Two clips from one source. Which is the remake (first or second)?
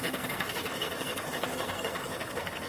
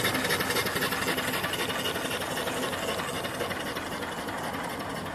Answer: first